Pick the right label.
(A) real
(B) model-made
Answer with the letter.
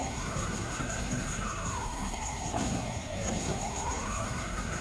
B